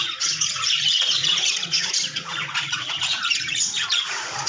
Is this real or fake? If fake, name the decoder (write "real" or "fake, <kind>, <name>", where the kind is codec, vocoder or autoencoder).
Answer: fake, vocoder, Vocos